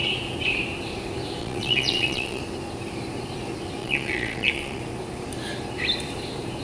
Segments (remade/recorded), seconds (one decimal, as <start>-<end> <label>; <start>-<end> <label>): 0.0-1.4 recorded; 1.4-2.4 remade; 2.4-3.8 recorded; 3.8-4.8 remade; 4.8-6.6 recorded